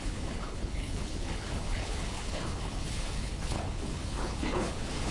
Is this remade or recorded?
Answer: remade